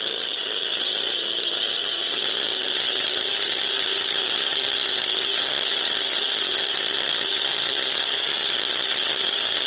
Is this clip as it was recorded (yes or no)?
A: no